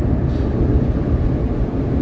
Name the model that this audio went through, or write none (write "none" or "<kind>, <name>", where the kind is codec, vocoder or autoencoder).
none